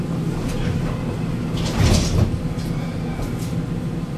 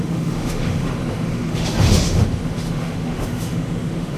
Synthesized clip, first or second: second